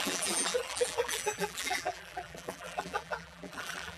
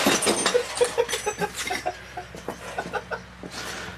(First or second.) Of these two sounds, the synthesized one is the first